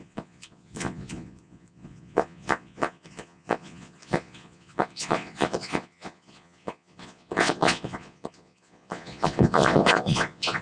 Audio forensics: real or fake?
fake